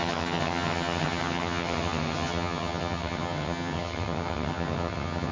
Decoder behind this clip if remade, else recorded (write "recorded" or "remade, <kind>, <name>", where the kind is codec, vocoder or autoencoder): remade, vocoder, HiFi-GAN